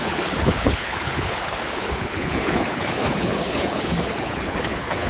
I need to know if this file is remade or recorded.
remade